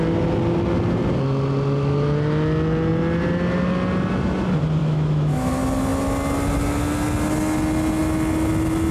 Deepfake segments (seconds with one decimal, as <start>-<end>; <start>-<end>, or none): 4.8-5.5